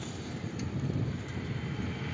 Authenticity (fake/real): real